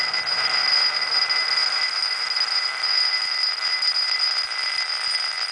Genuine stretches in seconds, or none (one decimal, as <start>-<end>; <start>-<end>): 0.0-5.5